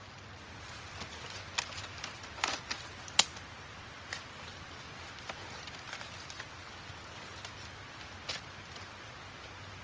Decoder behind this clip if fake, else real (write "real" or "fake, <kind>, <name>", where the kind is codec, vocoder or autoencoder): real